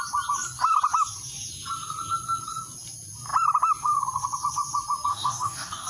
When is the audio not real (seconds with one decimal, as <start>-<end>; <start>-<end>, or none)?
5.1-5.9